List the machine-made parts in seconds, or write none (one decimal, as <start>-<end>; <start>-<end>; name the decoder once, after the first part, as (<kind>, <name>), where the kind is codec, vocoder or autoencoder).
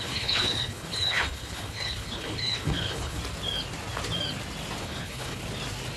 0.0-3.2 (codec, HILCodec); 4.8-5.4